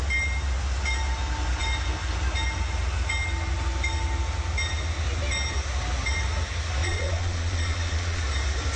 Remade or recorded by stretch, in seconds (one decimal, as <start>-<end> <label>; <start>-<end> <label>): 0.0-6.8 recorded; 6.8-8.2 remade; 8.2-8.8 recorded